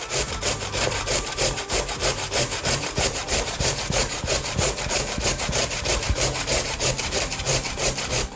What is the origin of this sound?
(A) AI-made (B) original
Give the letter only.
A